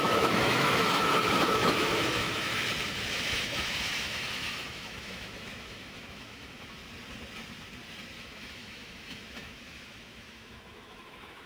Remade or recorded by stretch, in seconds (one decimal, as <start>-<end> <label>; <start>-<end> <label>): 0.0-2.5 remade; 2.5-3.1 recorded; 3.1-6.8 remade; 6.8-8.2 recorded; 8.2-11.5 remade